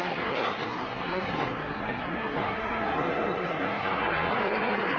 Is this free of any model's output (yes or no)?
no